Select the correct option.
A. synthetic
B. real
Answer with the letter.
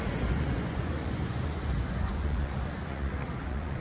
A